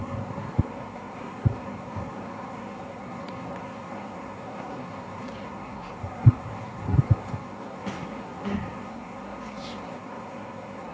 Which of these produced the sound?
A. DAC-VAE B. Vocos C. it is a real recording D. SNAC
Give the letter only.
D